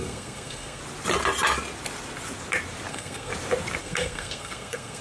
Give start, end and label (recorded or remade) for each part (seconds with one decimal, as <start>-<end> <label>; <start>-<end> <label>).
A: 0.0-0.8 remade; 0.8-2.9 recorded; 2.9-3.3 remade; 3.3-3.8 recorded; 3.8-5.0 remade

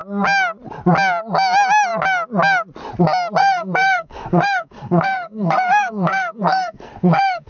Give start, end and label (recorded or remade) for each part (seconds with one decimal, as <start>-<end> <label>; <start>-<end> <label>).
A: 0.0-3.4 recorded; 3.4-7.5 remade

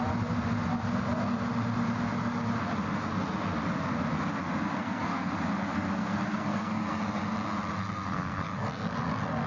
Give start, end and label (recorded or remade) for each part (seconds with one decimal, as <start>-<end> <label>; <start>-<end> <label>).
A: 0.0-4.7 recorded; 4.7-5.3 remade; 5.3-5.7 recorded; 5.7-7.0 remade; 7.0-7.8 recorded; 7.8-8.5 remade; 8.5-9.5 recorded

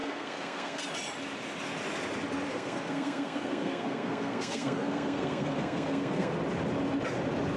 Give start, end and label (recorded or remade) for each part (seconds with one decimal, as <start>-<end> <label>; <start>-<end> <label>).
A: 0.0-0.8 remade; 0.8-2.5 recorded; 2.5-6.3 remade; 6.3-7.6 recorded

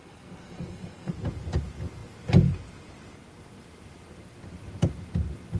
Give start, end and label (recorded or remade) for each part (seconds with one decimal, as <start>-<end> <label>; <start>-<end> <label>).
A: 0.0-1.1 remade; 1.1-5.6 recorded

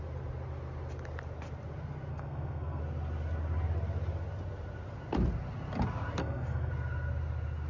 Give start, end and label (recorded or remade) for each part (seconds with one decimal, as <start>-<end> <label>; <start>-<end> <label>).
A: 0.0-2.1 recorded; 2.1-2.8 remade; 2.8-6.2 recorded; 6.2-6.7 remade; 6.7-7.7 recorded

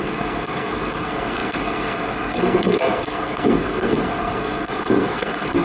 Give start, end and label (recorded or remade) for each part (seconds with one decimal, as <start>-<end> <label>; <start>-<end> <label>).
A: 0.0-5.6 remade

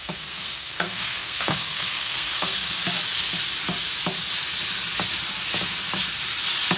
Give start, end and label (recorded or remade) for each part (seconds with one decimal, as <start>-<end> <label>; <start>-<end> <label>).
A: 0.0-2.8 remade; 2.8-6.8 recorded